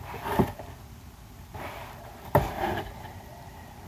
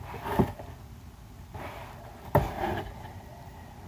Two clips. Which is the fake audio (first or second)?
first